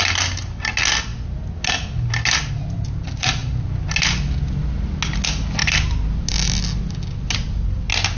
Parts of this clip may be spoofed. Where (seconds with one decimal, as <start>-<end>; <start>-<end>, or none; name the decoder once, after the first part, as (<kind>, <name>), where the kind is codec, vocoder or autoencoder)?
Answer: none